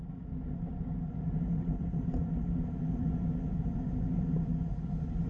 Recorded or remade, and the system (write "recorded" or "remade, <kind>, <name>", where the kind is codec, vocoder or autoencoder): recorded